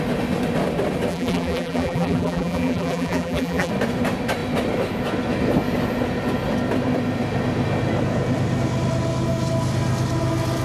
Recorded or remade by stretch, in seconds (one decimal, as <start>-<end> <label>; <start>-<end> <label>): 0.0-1.1 recorded; 1.1-3.7 remade; 3.7-10.6 recorded